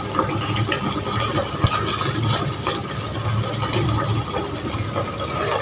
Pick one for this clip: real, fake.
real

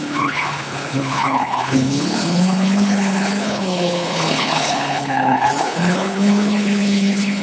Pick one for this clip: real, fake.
fake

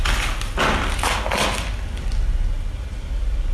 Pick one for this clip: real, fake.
real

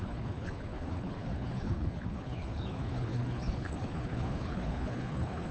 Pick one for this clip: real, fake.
fake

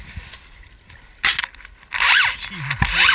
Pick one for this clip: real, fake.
real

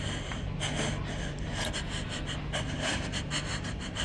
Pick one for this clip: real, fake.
real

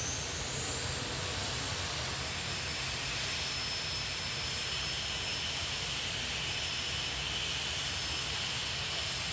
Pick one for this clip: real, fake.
real